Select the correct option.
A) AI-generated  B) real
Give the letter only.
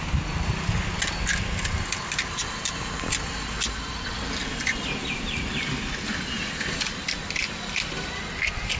B